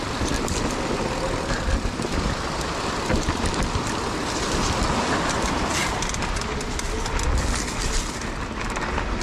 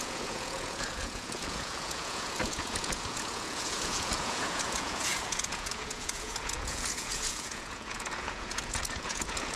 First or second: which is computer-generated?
second